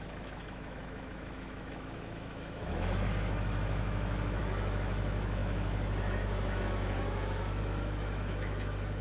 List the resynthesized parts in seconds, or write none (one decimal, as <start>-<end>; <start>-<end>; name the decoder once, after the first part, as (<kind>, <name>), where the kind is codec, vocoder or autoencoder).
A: 0.0-9.0 (autoencoder, DAC-VAE)